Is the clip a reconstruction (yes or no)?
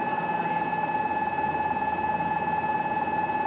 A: no